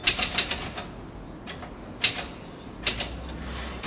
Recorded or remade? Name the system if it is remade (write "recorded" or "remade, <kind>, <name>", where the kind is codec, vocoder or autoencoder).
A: recorded